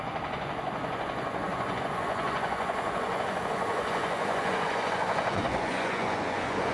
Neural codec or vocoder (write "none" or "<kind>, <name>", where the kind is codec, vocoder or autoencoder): vocoder, Vocos